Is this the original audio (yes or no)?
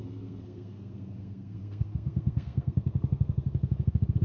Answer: no